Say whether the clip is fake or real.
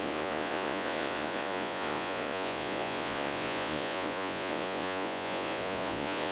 fake